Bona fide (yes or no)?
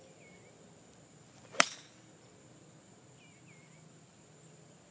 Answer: yes